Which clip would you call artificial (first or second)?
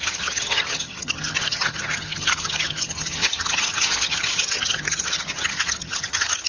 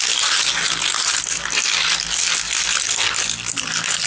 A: first